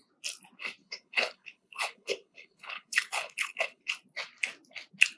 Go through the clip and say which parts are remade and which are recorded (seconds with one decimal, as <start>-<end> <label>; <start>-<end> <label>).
0.0-0.8 recorded; 0.8-3.9 remade; 3.9-5.2 recorded